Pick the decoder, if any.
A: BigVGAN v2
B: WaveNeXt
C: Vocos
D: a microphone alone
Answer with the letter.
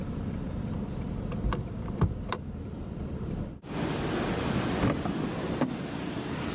A